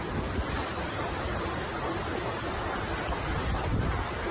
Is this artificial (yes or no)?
no